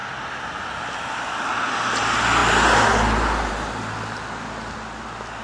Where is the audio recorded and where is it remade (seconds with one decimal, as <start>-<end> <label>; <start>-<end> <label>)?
0.0-5.4 recorded

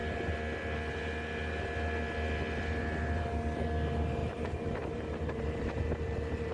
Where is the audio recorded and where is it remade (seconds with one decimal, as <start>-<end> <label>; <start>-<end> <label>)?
0.0-4.2 recorded; 4.2-6.5 remade

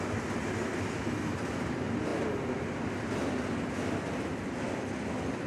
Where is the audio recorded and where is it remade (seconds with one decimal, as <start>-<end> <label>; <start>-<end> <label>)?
0.0-5.5 recorded

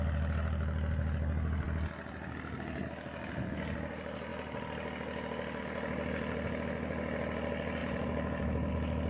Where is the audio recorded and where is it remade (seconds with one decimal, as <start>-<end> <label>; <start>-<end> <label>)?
0.0-7.8 recorded; 7.8-8.7 remade; 8.7-9.1 recorded

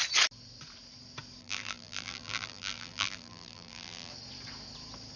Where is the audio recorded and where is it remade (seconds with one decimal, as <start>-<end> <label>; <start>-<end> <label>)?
0.0-1.4 recorded; 1.4-4.1 remade; 4.1-5.2 recorded

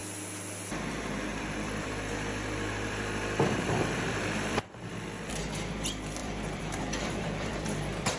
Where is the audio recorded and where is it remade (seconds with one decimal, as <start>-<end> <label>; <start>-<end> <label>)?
0.0-1.3 recorded; 1.3-5.0 remade; 5.0-6.2 recorded; 6.2-8.2 remade

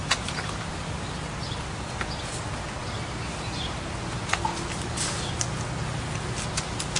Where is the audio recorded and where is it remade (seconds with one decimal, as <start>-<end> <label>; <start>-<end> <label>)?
0.0-0.8 remade; 0.8-7.0 recorded

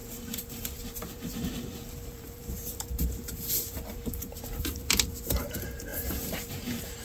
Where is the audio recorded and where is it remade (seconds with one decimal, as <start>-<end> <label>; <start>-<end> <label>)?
0.0-7.0 remade